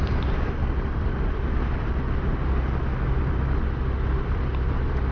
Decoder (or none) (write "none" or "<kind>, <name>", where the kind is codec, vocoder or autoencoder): none